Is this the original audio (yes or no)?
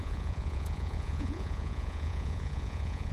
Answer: no